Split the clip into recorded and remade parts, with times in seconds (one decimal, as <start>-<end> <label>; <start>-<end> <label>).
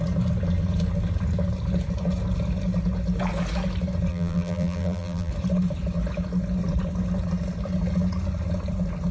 0.0-4.1 recorded; 4.1-5.3 remade; 5.3-9.1 recorded